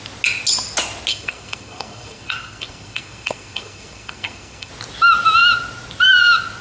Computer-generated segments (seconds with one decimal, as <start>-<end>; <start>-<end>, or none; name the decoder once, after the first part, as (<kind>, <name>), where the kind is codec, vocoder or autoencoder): 1.1-4.7 (codec, SNAC)